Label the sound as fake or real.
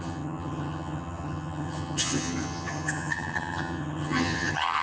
fake